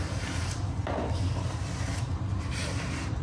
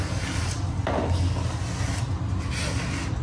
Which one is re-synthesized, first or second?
first